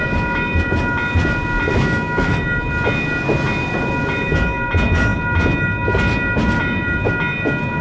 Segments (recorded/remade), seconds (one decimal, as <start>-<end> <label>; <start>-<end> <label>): 0.0-1.7 recorded; 1.7-2.3 remade; 2.3-7.8 recorded